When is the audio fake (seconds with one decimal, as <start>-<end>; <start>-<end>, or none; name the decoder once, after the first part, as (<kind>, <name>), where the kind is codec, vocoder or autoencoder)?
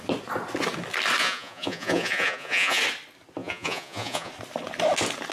1.2-2.8 (vocoder, Vocos); 3.4-4.3